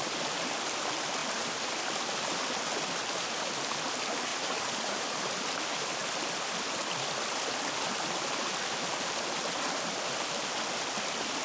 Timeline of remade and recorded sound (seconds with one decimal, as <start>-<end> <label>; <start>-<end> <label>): 0.0-4.3 recorded; 4.3-5.4 remade; 5.4-11.4 recorded